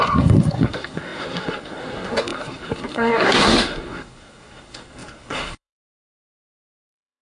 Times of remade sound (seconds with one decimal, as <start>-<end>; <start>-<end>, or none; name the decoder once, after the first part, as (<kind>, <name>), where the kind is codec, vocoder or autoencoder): 0.0-7.2 (codec, SNAC)